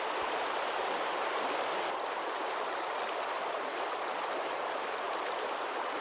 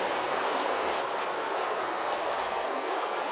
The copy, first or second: second